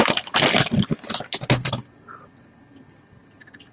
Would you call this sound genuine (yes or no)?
yes